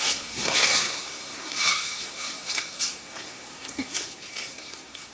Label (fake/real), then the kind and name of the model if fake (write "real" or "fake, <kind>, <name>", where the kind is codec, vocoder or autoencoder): fake, codec, SNAC